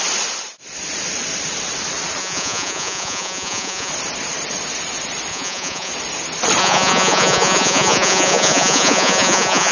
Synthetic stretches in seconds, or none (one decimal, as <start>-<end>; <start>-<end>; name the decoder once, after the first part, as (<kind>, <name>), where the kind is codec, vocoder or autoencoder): 2.2-3.9 (vocoder, Vocos); 5.3-5.9; 6.6-9.7